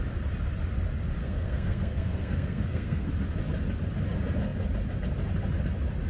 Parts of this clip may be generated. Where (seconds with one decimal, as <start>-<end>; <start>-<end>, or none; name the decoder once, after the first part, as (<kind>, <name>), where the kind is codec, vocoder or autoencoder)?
1.2-3.1 (codec, SNAC)